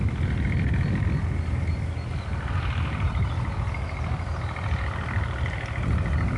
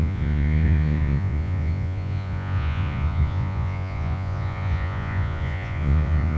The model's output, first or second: second